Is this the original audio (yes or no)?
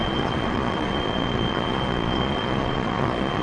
no